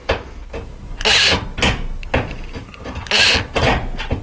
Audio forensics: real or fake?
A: real